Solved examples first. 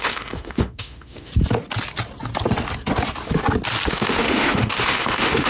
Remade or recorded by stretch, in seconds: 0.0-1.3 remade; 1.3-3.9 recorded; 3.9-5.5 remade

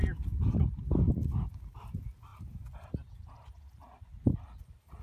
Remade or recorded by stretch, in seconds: 0.0-5.0 recorded

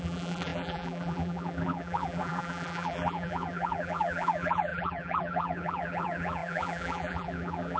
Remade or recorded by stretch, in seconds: 0.0-7.8 remade

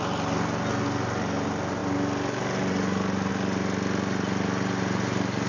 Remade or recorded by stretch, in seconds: 0.0-5.5 recorded

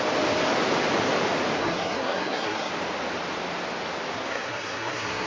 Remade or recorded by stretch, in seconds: 0.0-1.6 recorded; 1.6-2.7 remade; 2.7-4.3 recorded; 4.3-5.3 remade

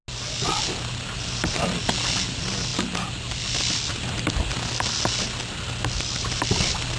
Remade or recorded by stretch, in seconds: 0.0-7.0 recorded

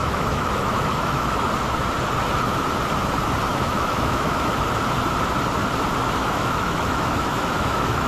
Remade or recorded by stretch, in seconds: 0.0-1.5 remade; 1.5-3.5 recorded; 3.5-4.5 remade; 4.5-6.2 recorded; 6.2-8.1 remade

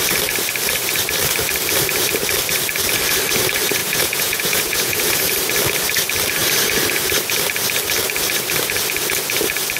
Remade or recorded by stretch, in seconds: 0.0-3.8 recorded; 3.8-5.2 remade; 5.2-9.8 recorded